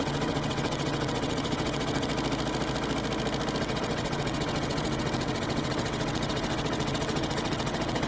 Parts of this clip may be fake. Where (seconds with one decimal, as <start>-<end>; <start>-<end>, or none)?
0.0-2.1; 3.6-8.1